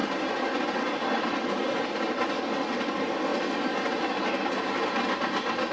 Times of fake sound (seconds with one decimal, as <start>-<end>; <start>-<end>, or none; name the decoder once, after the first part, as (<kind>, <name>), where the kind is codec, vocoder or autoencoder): none